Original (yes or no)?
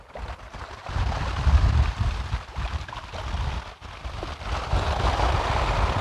yes